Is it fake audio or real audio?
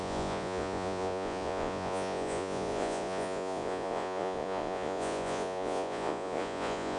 fake